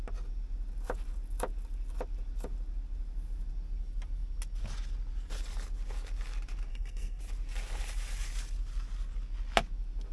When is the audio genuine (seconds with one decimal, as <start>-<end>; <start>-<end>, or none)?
0.0-6.7; 7.2-10.1